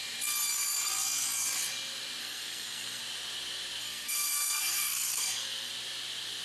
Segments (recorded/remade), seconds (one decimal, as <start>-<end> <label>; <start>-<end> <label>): 0.0-2.2 recorded; 2.2-3.0 remade; 3.0-3.8 recorded; 3.8-5.7 remade; 5.7-6.4 recorded